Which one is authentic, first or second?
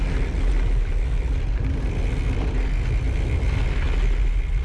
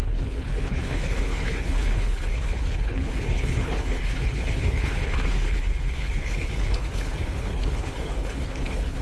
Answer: first